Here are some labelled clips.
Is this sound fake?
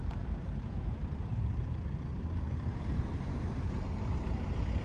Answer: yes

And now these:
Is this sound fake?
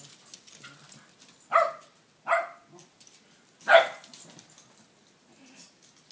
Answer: no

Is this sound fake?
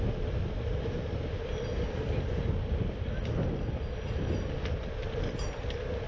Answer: no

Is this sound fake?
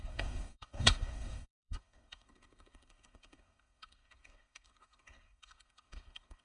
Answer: yes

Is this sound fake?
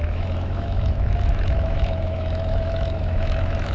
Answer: yes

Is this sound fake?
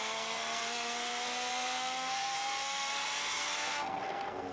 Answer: yes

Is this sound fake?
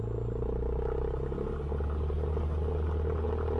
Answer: no